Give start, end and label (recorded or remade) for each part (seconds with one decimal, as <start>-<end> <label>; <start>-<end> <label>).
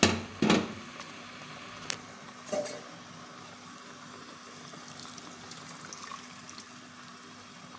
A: 0.0-7.1 recorded; 7.1-7.8 remade